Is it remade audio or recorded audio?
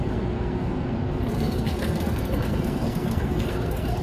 remade